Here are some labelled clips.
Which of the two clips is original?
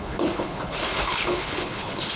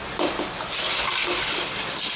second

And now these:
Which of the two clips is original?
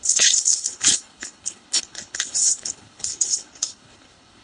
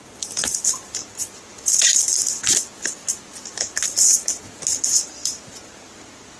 second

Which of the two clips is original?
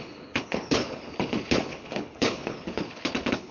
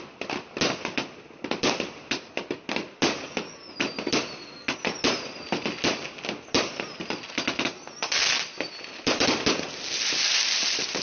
second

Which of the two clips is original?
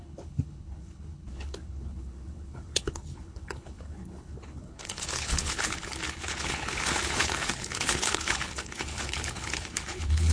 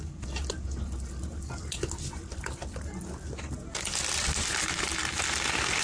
second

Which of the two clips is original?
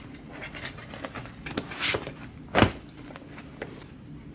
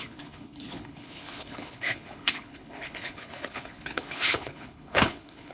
first